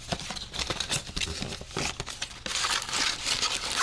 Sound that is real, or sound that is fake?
real